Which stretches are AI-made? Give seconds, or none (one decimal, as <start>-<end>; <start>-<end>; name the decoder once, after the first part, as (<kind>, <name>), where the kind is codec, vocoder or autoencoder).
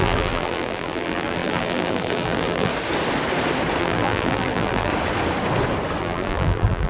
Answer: 0.0-2.7 (vocoder, BigVGAN v2); 3.8-4.9; 6.0-6.9